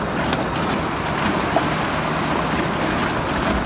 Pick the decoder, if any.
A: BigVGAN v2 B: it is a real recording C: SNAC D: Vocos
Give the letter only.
A